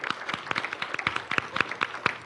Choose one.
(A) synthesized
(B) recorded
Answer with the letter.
B